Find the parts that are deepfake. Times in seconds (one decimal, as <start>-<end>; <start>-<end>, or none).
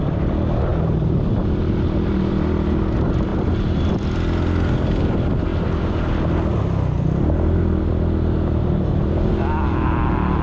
none